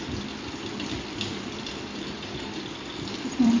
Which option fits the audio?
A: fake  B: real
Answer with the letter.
A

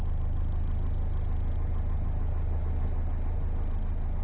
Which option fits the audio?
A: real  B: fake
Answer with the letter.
A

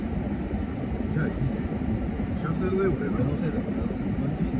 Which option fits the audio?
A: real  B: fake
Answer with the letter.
A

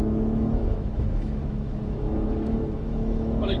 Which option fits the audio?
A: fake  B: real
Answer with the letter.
A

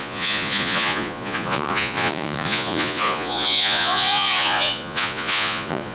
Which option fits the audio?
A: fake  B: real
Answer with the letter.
A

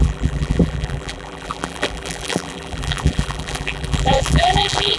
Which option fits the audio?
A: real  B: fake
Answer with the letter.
B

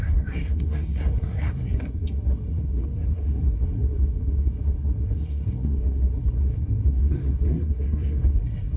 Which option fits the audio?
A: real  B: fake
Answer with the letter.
B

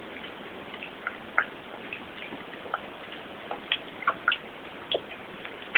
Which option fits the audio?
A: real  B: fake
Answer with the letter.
A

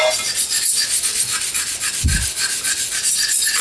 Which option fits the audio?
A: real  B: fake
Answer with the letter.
A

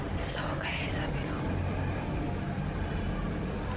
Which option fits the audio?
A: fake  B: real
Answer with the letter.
B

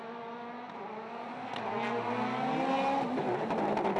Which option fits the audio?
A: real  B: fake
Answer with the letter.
A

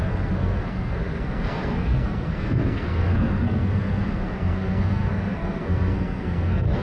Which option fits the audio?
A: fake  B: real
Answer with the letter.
A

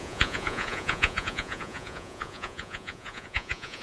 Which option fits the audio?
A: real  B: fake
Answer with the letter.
B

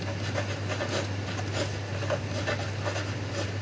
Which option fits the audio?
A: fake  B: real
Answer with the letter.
B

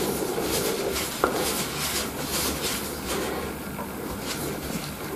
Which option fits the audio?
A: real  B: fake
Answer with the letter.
A